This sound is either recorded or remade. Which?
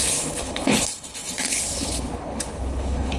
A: remade